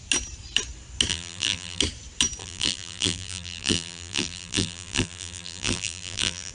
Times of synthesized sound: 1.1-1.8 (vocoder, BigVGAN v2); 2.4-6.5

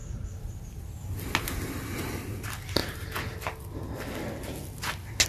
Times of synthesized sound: 1.5-2.8 (vocoder, BigVGAN v2)

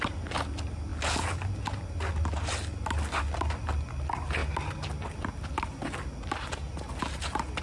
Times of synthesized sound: none

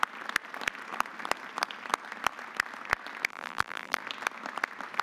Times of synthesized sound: 3.3-4.0 (vocoder, BigVGAN v2)

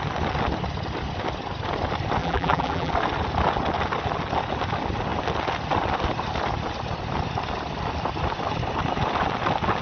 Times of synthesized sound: 2.2-2.9 (vocoder, BigVGAN v2)